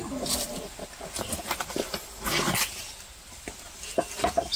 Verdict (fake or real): real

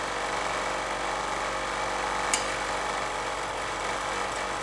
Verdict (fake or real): real